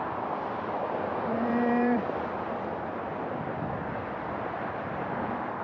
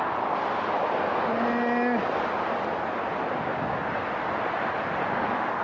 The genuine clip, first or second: second